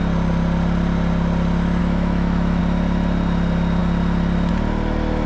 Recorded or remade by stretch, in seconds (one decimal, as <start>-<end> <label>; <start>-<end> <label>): 0.0-1.8 recorded; 1.8-2.6 remade; 2.6-5.3 recorded